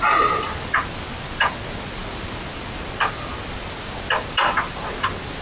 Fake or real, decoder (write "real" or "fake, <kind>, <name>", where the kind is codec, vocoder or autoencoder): real